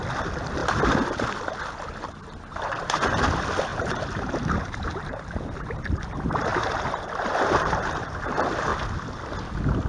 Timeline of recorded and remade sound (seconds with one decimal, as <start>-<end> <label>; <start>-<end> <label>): 0.0-3.7 recorded; 3.7-5.2 remade; 5.2-6.5 recorded; 6.5-8.2 remade; 8.2-9.9 recorded